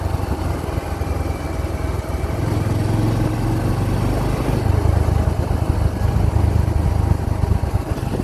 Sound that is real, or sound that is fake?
real